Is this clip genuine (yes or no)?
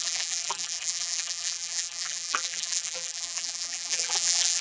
no